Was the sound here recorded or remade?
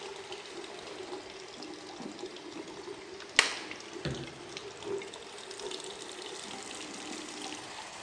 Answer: recorded